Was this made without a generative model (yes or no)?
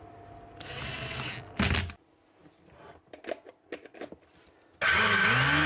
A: yes